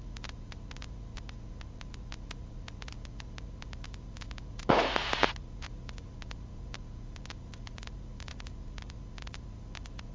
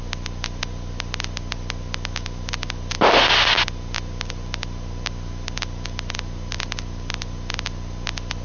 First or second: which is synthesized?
first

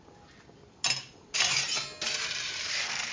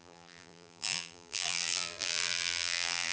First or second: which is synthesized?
second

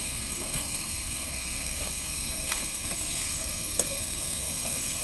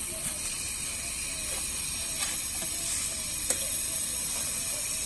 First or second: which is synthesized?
first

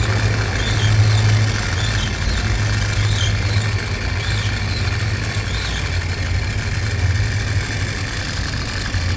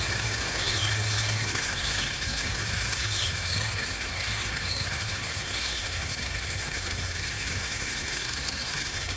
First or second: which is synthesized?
second